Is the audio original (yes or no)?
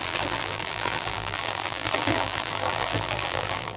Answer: no